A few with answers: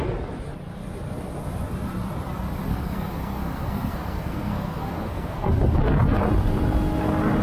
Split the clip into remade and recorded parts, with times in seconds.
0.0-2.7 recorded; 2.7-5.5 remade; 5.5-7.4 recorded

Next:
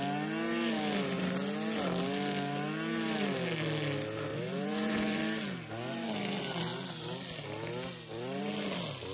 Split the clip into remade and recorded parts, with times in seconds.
0.0-4.3 recorded; 4.3-5.2 remade; 5.2-9.1 recorded

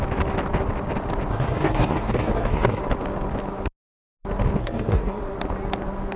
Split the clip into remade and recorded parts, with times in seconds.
0.0-1.3 recorded; 1.3-2.8 remade; 2.8-4.6 recorded; 4.6-5.2 remade; 5.2-6.2 recorded